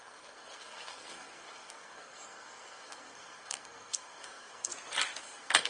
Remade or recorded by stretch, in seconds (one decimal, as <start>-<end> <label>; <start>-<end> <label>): 0.0-4.7 remade; 4.7-5.2 recorded; 5.2-5.7 remade